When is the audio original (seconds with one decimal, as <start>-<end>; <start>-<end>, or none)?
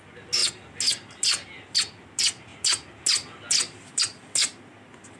0.0-5.2